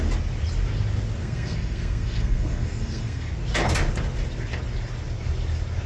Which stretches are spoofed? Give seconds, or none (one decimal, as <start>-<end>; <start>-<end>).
1.2-3.3